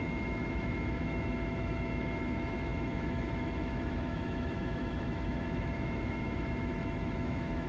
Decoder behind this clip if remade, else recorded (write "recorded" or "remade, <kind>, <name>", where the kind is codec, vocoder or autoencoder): remade, autoencoder, DAC-VAE